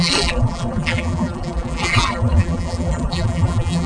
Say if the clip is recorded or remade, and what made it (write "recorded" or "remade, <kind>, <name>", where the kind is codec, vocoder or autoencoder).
remade, vocoder, BigVGAN v2